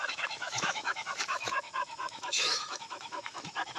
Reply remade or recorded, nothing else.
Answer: remade